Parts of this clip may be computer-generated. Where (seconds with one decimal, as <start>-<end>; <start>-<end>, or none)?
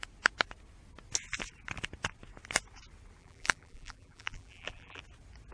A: 3.2-5.0